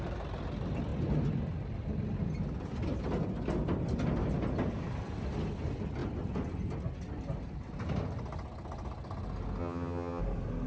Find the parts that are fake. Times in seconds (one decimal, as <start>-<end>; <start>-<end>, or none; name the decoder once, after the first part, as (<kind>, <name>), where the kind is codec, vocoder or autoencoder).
9.6-10.2 (vocoder, HiFi-GAN)